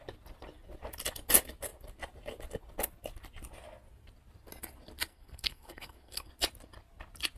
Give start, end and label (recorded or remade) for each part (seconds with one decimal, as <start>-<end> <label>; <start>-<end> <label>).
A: 0.0-5.1 recorded; 5.1-6.3 remade; 6.3-7.4 recorded